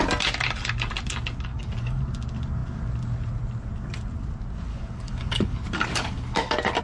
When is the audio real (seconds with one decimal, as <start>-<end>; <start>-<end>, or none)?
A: 0.0-1.5; 2.0-4.7